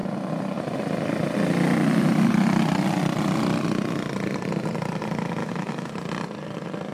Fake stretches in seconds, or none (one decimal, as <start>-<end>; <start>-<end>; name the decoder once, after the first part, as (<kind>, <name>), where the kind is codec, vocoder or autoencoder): 5.4-5.9 (autoencoder, DAC-VAE)